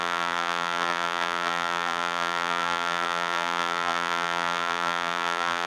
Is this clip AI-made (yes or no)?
yes